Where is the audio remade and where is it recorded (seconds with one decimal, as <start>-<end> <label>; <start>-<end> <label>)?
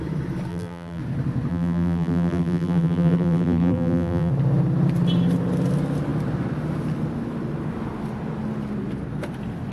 0.0-0.5 recorded; 0.5-1.0 remade; 1.0-1.5 recorded; 1.5-4.3 remade; 4.3-9.7 recorded